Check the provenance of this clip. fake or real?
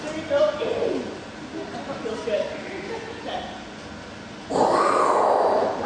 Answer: real